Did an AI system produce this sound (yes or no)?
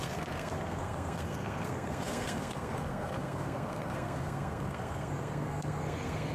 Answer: yes